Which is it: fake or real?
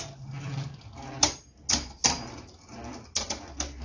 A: real